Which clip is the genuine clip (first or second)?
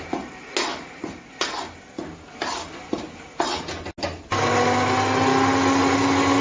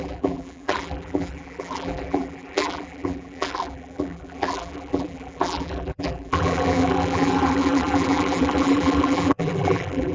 first